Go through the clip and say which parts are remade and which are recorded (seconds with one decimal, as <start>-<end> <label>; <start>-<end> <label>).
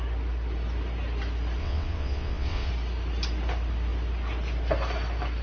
0.0-1.6 recorded; 1.6-2.7 remade; 2.7-5.4 recorded